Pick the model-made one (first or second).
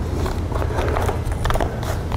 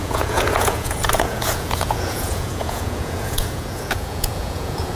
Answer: second